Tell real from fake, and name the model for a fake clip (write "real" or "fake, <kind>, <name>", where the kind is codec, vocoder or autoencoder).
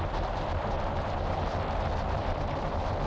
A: real